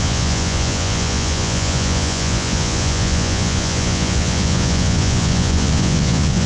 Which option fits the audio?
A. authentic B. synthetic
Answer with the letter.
B